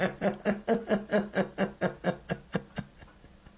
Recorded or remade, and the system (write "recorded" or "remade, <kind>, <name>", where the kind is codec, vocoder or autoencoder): recorded